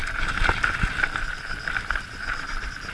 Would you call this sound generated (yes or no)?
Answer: no